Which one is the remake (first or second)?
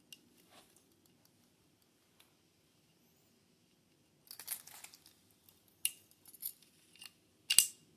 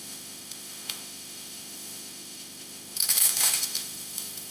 second